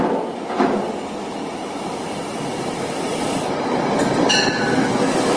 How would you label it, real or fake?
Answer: fake